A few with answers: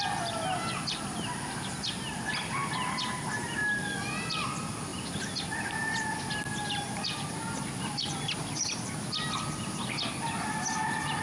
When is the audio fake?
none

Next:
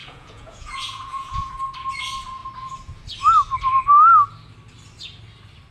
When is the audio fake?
0.0-1.5 (vocoder, Vocos)

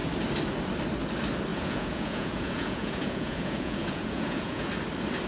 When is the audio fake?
1.5-4.7 (vocoder, Vocos)

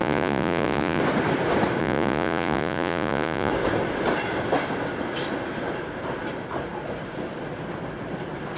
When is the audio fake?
0.0-1.0 (vocoder, Vocos); 1.8-3.5